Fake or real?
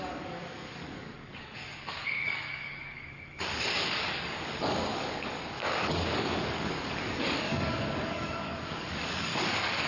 fake